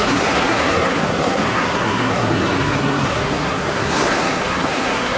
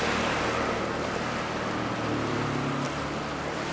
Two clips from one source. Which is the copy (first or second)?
first